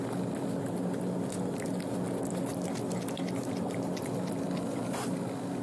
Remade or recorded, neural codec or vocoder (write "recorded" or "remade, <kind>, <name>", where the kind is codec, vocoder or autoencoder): recorded